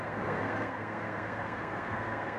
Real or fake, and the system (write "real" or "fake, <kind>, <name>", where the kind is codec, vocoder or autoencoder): fake, codec, SNAC